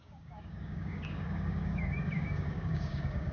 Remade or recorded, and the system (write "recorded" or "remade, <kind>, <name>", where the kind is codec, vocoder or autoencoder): remade, codec, DAC